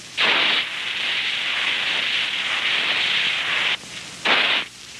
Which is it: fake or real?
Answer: real